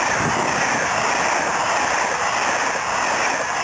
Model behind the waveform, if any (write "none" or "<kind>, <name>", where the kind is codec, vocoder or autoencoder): none